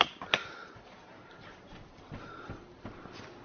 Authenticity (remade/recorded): recorded